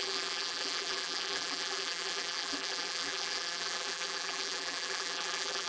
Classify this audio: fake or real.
fake